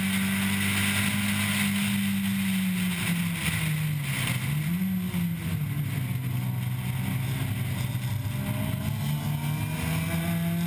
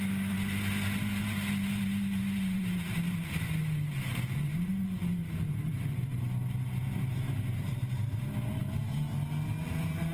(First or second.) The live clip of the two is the first